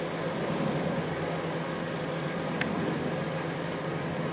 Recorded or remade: recorded